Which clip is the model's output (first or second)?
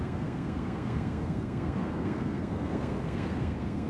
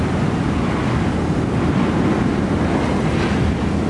first